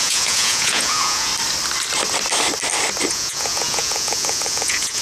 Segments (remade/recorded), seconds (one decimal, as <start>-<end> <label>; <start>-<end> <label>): 0.0-1.3 remade; 1.3-3.1 recorded; 3.1-5.0 remade